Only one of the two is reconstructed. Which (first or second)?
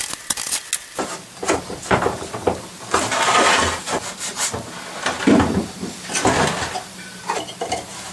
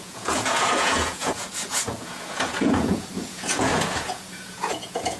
second